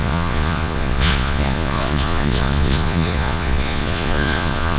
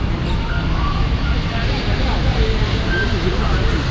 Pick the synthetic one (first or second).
first